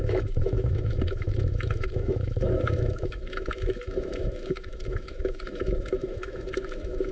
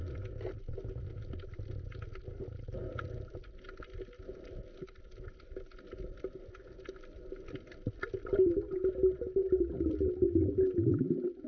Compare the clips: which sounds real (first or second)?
second